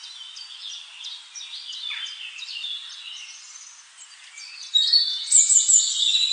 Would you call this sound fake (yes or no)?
no